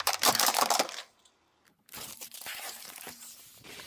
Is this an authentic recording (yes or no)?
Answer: no